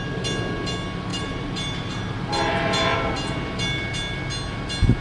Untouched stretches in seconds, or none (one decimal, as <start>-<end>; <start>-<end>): 0.0-1.1; 2.6-5.0